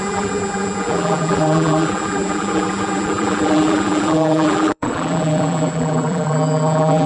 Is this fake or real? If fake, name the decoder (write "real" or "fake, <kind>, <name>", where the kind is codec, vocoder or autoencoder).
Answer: fake, vocoder, BigVGAN v2